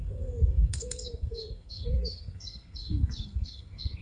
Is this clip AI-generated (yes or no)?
yes